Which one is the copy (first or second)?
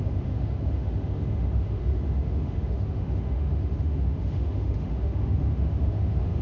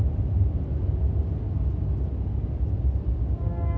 first